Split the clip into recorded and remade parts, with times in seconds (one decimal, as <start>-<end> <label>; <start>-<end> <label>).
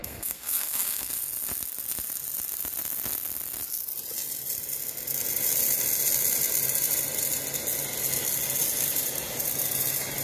0.0-1.1 remade; 1.1-10.2 recorded